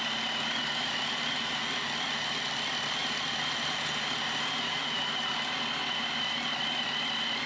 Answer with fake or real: real